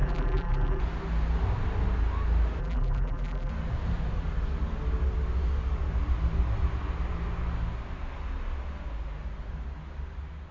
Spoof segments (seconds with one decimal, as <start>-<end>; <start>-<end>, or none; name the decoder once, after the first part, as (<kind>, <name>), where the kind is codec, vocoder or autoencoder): 0.0-0.8 (vocoder, BigVGAN v2); 2.6-3.5

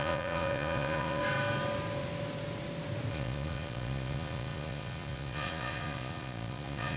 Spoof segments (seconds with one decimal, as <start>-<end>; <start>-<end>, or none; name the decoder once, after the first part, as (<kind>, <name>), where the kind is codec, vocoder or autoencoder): 0.0-1.2 (vocoder, Vocos); 3.1-7.0

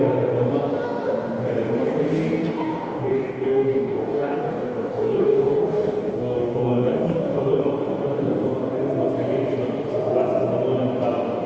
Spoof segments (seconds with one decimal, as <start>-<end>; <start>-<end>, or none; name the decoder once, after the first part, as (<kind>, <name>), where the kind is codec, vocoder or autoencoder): 2.5-7.7 (codec, DAC)